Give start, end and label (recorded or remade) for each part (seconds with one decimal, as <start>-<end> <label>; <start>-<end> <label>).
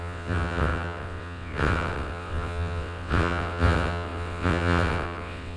0.0-5.6 remade